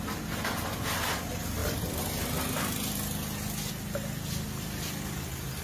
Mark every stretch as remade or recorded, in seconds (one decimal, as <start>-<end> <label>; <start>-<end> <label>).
0.0-5.6 recorded